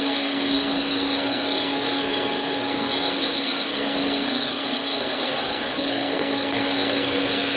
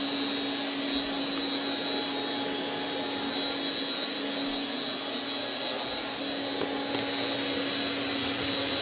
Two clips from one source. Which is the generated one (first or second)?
first